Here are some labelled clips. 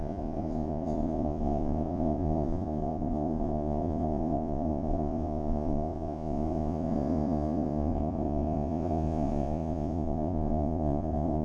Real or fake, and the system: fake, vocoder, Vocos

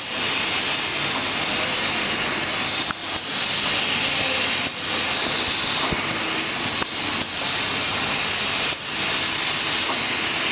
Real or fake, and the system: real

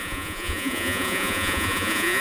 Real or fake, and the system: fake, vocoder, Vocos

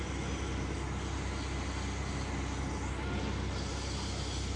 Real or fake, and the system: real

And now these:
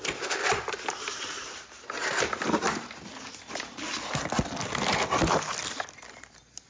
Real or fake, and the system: real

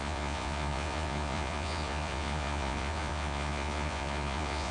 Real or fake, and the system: fake, vocoder, Vocos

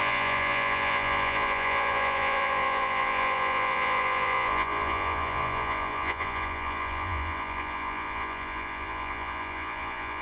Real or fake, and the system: fake, vocoder, Vocos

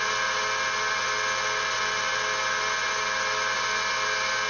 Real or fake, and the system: real